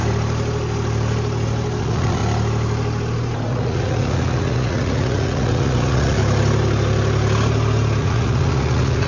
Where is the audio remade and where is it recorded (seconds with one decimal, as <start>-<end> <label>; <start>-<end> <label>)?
0.0-1.8 recorded; 1.8-2.2 remade; 2.2-3.5 recorded; 3.5-6.2 remade; 6.2-8.0 recorded; 8.0-9.1 remade